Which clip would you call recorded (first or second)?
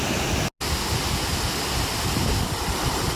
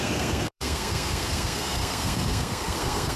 first